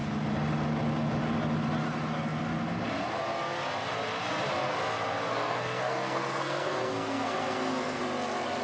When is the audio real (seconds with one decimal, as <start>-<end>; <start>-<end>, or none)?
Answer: 0.0-5.3; 8.0-8.6